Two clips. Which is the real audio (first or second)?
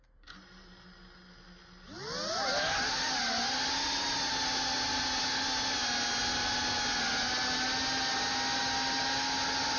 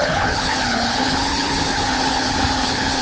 first